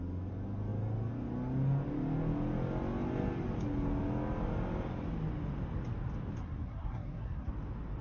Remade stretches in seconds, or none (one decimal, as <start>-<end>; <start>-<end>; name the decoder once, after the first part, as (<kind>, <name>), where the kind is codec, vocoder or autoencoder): 6.4-7.5 (codec, SNAC)